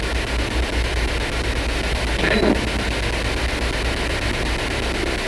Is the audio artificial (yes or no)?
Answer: no